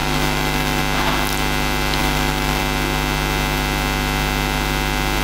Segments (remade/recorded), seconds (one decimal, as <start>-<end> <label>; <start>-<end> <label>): 0.0-0.8 remade; 0.8-2.0 recorded; 2.0-2.6 remade; 2.6-5.2 recorded